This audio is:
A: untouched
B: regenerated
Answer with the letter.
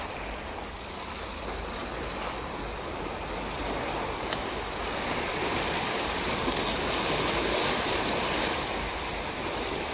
A